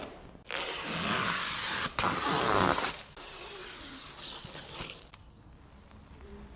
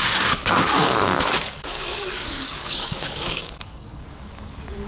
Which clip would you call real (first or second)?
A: first